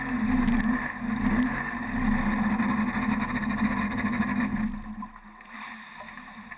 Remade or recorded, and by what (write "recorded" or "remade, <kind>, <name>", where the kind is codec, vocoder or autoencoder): recorded